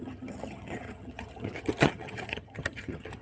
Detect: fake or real fake